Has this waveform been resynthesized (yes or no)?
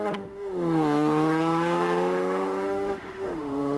yes